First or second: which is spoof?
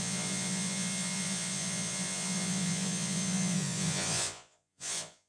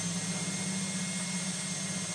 first